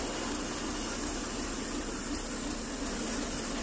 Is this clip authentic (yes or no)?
yes